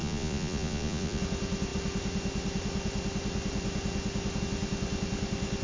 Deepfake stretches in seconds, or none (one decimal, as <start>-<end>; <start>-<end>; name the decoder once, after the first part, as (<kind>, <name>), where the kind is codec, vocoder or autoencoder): 0.0-1.2 (vocoder, Vocos)